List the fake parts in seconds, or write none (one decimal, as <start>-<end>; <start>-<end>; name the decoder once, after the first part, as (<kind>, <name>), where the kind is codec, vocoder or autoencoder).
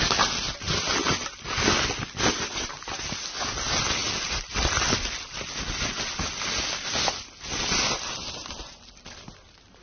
none